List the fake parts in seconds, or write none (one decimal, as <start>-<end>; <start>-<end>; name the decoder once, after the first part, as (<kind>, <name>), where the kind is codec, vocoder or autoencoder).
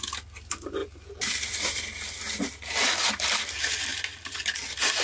0.8-2.2 (vocoder, BigVGAN v2); 3.9-4.4